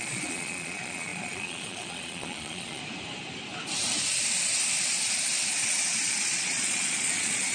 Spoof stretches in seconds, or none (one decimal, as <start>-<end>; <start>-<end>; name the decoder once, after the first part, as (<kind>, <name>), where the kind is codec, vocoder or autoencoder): 0.0-2.8 (vocoder, Vocos); 6.3-7.5